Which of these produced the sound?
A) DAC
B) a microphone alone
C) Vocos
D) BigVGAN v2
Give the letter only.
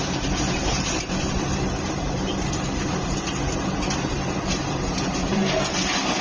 B